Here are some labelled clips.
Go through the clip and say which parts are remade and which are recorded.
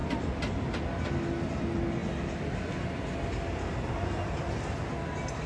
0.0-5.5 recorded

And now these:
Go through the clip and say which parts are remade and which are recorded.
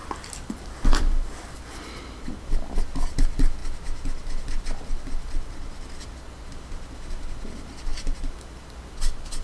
0.0-9.4 recorded